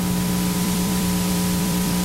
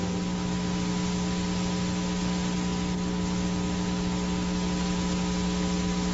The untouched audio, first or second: second